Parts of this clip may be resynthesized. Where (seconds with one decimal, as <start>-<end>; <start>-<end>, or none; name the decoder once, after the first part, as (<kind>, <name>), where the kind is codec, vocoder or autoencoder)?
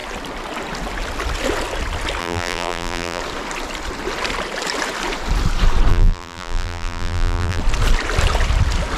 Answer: 2.2-3.2 (vocoder, BigVGAN v2); 5.9-7.6